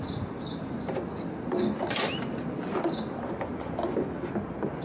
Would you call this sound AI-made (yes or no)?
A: no